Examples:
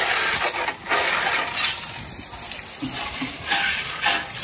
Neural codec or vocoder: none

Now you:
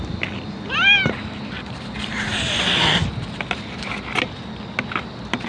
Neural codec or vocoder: none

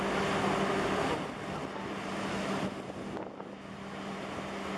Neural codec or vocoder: none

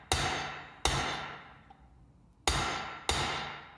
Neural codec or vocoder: none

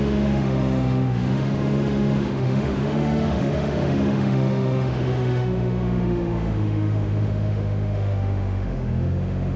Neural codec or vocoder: autoencoder, DAC-VAE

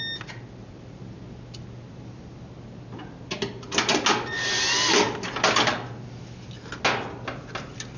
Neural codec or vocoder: none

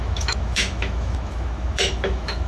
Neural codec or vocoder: autoencoder, DAC-VAE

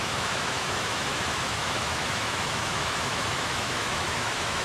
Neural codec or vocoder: autoencoder, DAC-VAE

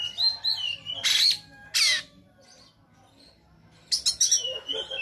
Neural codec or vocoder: none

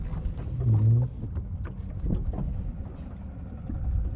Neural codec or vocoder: none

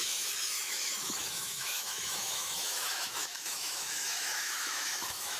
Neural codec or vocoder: autoencoder, DAC-VAE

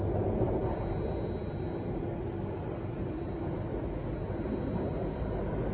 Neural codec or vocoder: none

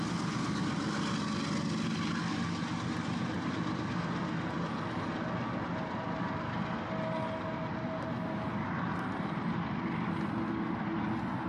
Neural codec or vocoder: none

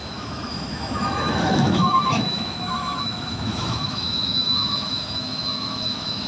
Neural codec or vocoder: autoencoder, DAC-VAE